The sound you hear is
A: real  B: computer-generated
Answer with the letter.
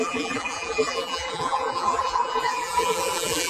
B